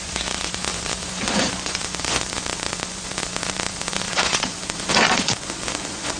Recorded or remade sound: remade